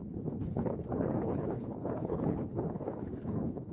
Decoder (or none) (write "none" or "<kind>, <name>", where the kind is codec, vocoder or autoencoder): codec, HILCodec